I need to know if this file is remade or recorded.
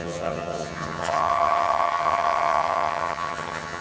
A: remade